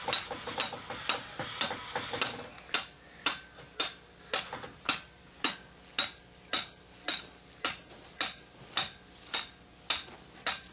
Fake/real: real